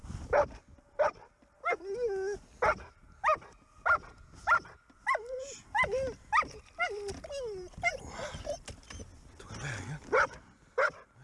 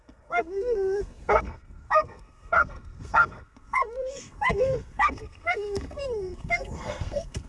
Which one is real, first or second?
first